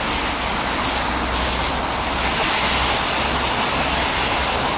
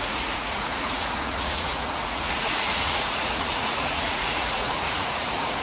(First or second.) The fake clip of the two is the second